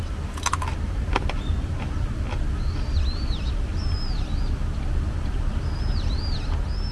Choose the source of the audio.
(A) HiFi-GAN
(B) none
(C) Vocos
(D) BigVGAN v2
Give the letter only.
B